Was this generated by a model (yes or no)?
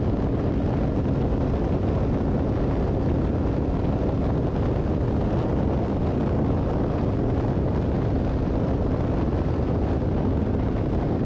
no